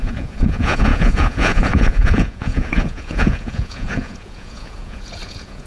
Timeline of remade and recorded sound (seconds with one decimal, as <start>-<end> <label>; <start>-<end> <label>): 0.0-5.7 remade